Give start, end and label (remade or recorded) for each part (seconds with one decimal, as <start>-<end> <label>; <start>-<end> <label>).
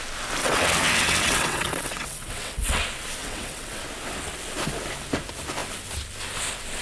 0.0-0.4 recorded; 0.4-2.8 remade; 2.8-3.2 recorded; 3.2-3.8 remade; 3.8-6.8 recorded